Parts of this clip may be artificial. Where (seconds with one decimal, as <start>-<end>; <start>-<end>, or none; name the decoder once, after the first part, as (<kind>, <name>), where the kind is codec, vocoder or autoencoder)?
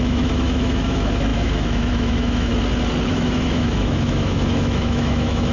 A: 0.0-2.5 (autoencoder, DAC-VAE); 3.1-5.5